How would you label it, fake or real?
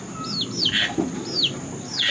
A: real